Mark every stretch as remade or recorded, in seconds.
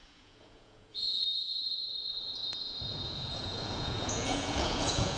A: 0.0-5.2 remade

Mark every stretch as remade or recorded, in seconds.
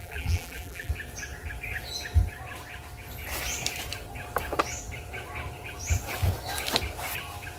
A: 0.0-0.9 remade; 0.9-7.6 recorded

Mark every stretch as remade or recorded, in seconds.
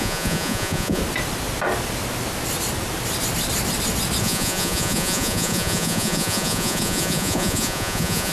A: 0.0-1.0 remade; 1.0-4.2 recorded; 4.2-8.3 remade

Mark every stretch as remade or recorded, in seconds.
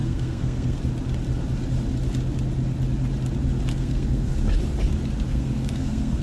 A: 0.0-0.8 remade; 0.8-3.7 recorded; 3.7-4.3 remade; 4.3-5.3 recorded; 5.3-6.2 remade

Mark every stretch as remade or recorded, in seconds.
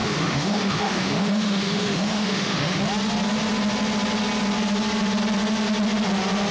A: 0.0-2.8 remade; 2.8-6.5 recorded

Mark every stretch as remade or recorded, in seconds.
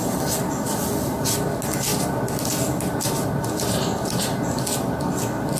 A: 0.0-5.6 recorded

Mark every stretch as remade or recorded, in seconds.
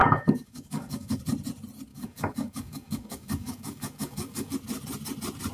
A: 0.0-1.2 remade; 1.2-1.9 recorded; 1.9-4.5 remade; 4.5-5.5 recorded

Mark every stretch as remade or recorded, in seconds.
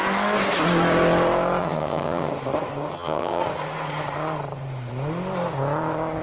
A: 0.0-1.6 recorded; 1.6-2.3 remade; 2.3-2.9 recorded; 2.9-3.4 remade; 3.4-6.2 recorded